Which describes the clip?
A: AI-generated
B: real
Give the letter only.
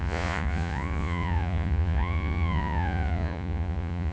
A